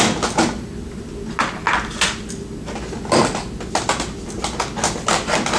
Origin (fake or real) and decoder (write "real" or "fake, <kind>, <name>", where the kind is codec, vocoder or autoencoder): real